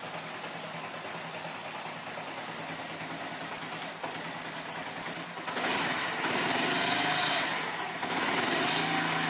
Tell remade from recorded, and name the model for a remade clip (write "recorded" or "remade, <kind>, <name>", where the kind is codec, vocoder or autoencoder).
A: recorded